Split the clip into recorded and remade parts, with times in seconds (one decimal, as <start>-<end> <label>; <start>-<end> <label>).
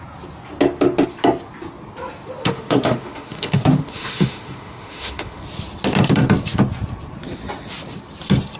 0.0-2.4 recorded; 2.4-5.4 remade; 5.4-8.6 recorded